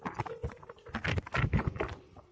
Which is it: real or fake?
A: real